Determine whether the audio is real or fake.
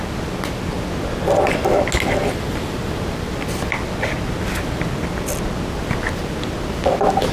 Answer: real